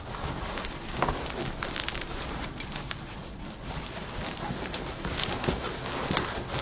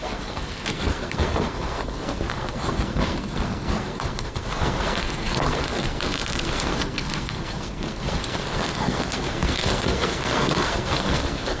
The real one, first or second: first